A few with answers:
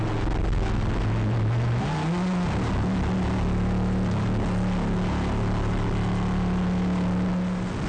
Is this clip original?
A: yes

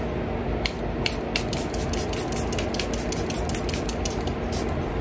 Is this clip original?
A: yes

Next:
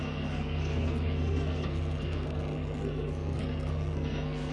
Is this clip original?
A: no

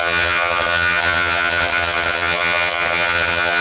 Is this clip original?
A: no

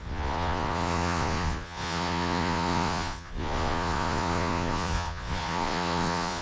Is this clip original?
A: no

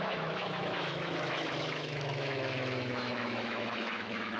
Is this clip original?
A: no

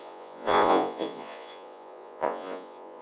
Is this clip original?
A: no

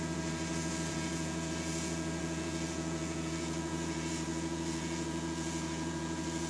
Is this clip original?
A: no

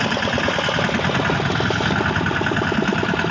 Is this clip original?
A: yes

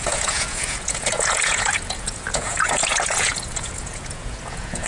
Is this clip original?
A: no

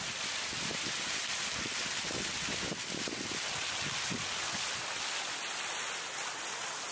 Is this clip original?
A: yes